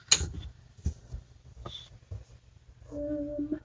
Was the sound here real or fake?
real